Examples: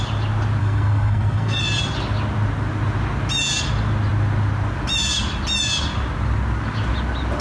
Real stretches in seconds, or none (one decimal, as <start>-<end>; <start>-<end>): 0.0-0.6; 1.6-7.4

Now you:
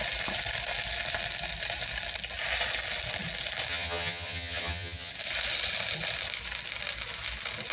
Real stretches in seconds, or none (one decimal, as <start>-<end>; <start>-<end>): 0.0-3.7; 5.1-7.7

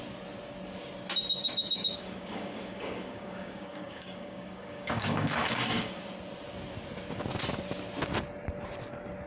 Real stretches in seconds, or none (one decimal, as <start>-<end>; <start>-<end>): 0.0-1.4; 6.0-9.3

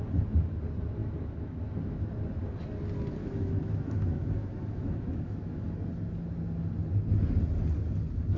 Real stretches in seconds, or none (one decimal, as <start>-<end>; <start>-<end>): 0.0-1.0; 2.1-3.2; 5.7-8.4

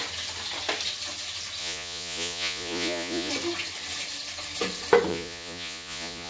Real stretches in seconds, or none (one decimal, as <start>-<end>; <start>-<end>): 0.0-1.6; 3.3-5.1

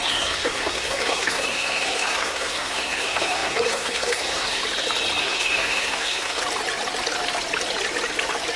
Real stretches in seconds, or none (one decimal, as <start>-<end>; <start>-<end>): 4.6-5.2; 6.4-8.6

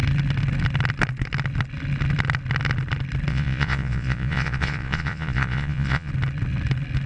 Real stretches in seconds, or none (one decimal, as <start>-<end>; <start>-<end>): 0.0-3.3; 6.1-7.1